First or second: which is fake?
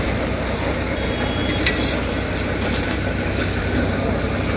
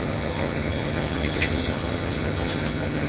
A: second